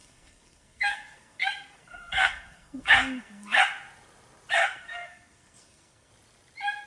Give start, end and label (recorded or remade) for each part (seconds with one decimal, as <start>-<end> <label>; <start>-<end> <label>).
0.0-3.6 remade; 3.6-4.6 recorded; 4.6-6.1 remade; 6.1-6.9 recorded